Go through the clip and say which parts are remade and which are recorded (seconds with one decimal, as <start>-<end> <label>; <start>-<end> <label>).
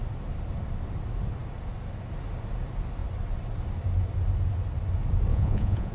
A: 0.0-5.3 recorded; 5.3-5.9 remade